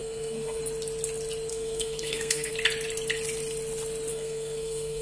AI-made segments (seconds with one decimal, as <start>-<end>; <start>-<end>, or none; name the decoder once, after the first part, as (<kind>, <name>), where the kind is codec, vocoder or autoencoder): 0.0-0.6 (codec, SNAC); 1.5-2.5; 4.1-5.0